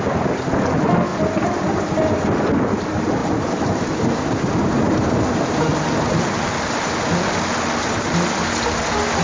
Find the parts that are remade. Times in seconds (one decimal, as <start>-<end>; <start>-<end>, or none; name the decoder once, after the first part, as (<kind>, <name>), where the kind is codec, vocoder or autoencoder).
1.1-2.1 (vocoder, BigVGAN v2); 3.2-6.2